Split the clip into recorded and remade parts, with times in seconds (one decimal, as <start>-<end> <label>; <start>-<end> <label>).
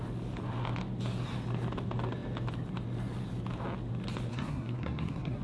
0.0-4.3 recorded; 4.3-5.4 remade